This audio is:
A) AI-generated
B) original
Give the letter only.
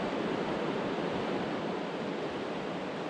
B